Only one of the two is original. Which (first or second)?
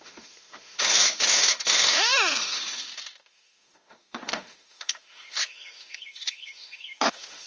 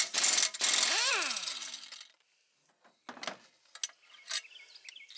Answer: second